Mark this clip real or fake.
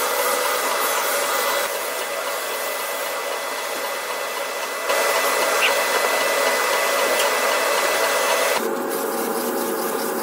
real